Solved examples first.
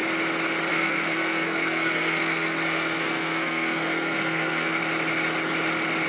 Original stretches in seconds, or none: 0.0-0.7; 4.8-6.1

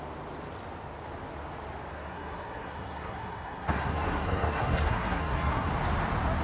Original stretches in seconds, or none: 0.0-1.9; 5.7-6.4

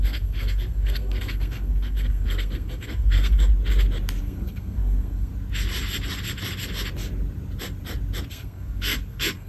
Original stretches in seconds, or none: 3.5-4.2; 5.3-8.3